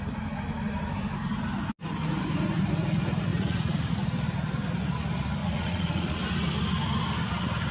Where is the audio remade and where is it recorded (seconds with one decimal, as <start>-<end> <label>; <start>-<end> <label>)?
0.0-3.3 recorded; 3.3-3.9 remade; 3.9-5.4 recorded; 5.4-6.2 remade; 6.2-7.7 recorded